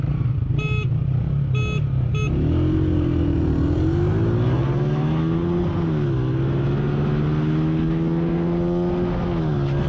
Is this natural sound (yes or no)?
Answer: yes